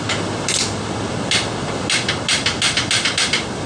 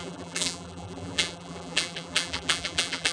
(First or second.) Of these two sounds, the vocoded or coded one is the second